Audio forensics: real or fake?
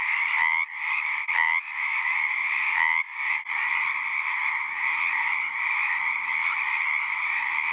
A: real